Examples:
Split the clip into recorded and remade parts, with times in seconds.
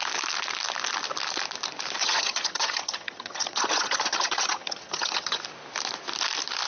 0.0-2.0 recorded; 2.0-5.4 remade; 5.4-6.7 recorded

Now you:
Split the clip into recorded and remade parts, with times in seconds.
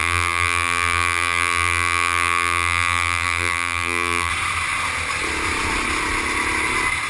0.0-4.3 remade; 4.3-7.1 recorded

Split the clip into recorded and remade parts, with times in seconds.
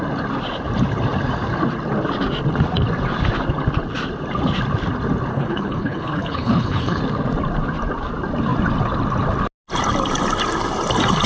0.0-5.3 recorded; 5.3-7.0 remade; 7.0-11.3 recorded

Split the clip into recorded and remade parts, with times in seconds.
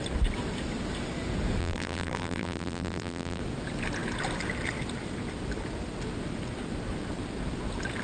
0.0-1.6 recorded; 1.6-3.4 remade; 3.4-8.0 recorded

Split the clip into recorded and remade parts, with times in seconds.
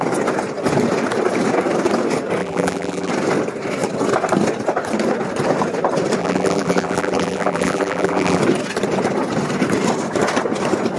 0.0-2.4 recorded; 2.4-3.1 remade; 3.1-6.2 recorded; 6.2-8.4 remade; 8.4-11.0 recorded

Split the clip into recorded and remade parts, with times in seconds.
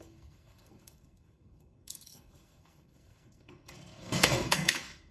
0.0-5.1 remade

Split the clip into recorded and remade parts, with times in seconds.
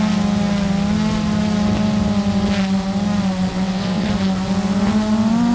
0.0-3.5 recorded; 3.5-4.1 remade; 4.1-5.5 recorded